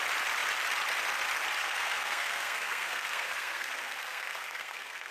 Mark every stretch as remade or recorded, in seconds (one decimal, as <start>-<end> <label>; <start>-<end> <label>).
0.0-1.6 recorded; 1.6-5.1 remade